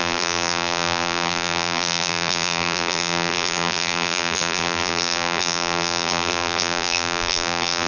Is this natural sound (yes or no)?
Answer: no